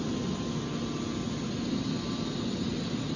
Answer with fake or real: real